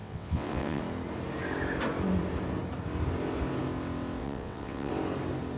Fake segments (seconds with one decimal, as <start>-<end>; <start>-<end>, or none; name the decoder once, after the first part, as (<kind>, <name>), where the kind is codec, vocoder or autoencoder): 0.0-0.8 (vocoder, WaveNeXt); 4.2-4.9